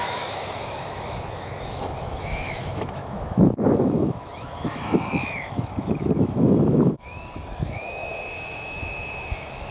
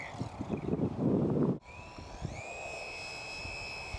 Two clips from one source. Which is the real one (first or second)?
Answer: second